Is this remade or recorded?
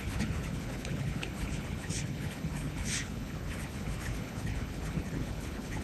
remade